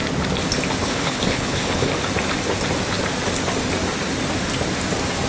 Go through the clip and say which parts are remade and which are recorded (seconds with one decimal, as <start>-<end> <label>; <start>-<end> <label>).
0.0-0.8 recorded; 0.8-1.9 remade; 1.9-5.3 recorded